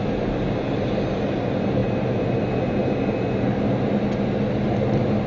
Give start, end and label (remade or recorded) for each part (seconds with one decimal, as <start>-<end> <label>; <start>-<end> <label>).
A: 0.0-5.3 recorded